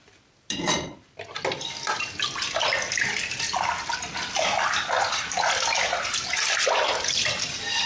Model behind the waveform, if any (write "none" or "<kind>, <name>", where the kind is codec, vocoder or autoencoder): none